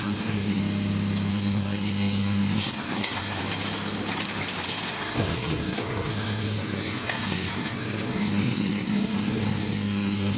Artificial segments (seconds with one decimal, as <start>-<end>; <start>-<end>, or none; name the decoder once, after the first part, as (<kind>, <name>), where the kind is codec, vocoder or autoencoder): 0.0-0.6 (codec, SNAC); 1.3-3.4; 4.9-10.4